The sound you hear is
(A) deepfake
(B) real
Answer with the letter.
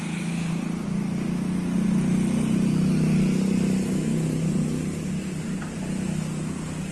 B